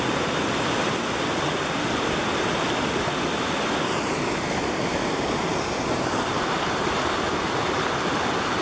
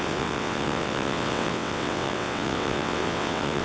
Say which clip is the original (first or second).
first